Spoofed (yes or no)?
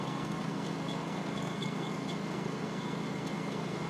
yes